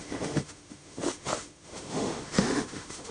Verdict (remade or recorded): remade